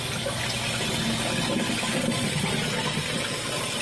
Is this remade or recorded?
recorded